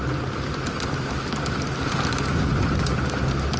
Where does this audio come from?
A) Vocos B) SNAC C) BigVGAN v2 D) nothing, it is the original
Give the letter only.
D